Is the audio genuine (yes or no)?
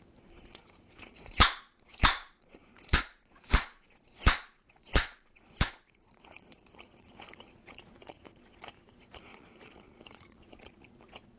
no